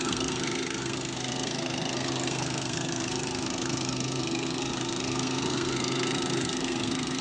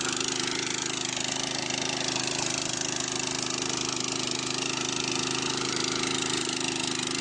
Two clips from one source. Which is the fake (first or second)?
first